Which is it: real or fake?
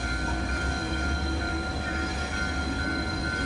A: real